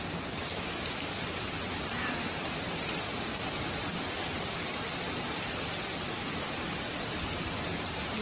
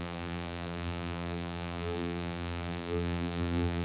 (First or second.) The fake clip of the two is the second